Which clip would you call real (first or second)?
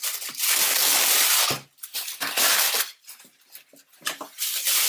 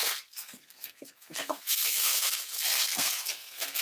first